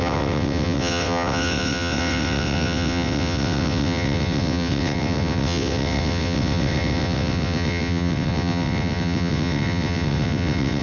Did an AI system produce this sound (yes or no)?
yes